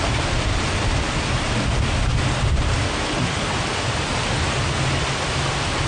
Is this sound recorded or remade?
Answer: recorded